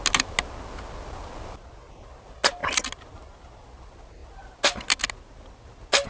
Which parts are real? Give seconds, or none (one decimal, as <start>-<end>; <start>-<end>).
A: 0.0-6.1